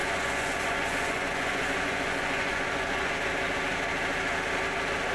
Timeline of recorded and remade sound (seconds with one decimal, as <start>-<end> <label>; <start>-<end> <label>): 0.0-3.1 remade; 3.1-5.1 recorded